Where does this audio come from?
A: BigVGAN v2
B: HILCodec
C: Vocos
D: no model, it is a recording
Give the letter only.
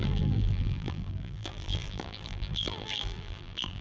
A